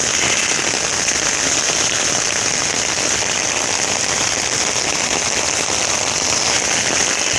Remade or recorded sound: recorded